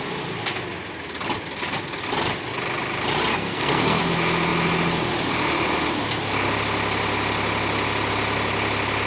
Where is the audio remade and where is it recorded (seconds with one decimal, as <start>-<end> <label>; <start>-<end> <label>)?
0.0-3.3 recorded; 3.3-4.0 remade; 4.0-9.1 recorded